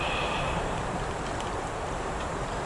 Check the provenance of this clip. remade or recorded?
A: remade